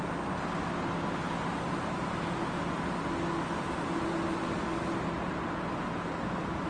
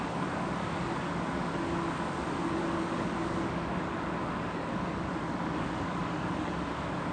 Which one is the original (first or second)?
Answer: first